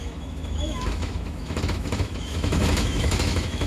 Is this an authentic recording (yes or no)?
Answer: no